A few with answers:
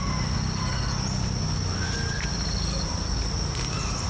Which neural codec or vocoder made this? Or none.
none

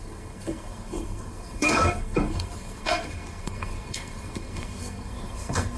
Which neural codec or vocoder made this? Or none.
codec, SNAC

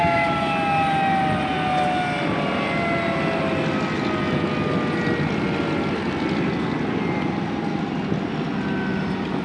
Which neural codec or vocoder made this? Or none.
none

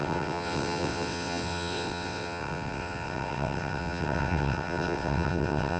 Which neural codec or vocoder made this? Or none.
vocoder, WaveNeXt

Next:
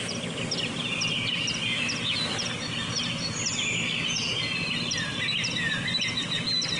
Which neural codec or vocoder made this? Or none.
none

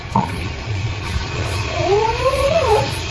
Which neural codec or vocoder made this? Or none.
vocoder, Vocos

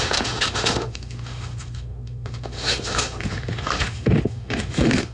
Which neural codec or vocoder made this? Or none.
autoencoder, DAC-VAE